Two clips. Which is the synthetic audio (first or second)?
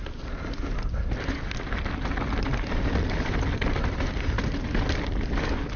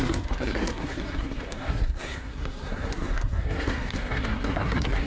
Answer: second